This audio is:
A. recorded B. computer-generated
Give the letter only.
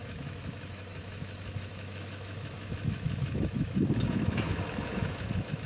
B